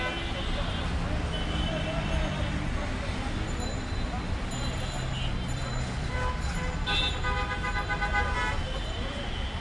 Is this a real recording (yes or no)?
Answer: yes